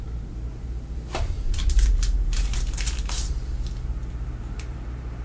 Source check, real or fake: fake